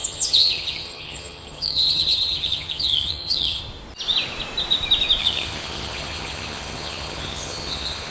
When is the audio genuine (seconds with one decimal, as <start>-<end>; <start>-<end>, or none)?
3.6-5.2